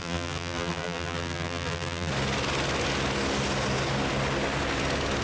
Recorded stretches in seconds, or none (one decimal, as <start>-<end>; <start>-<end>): 2.1-5.2